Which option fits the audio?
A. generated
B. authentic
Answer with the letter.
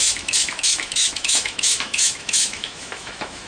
A